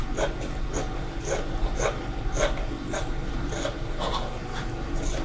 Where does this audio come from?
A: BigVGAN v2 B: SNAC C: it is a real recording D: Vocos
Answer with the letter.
C